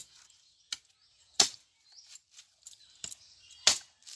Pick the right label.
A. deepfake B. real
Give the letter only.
B